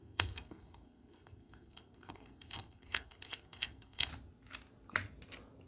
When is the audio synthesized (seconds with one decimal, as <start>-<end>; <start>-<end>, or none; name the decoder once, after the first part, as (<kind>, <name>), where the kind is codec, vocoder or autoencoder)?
0.0-4.1 (codec, SNAC)